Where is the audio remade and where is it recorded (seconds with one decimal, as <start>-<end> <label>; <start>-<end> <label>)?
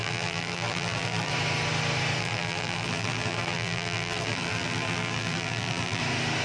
0.0-1.3 remade; 1.3-2.2 recorded; 2.2-6.0 remade; 6.0-6.4 recorded